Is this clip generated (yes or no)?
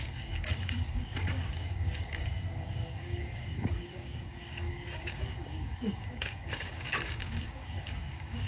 yes